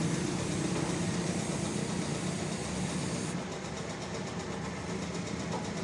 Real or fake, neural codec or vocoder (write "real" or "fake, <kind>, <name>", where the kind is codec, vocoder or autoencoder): real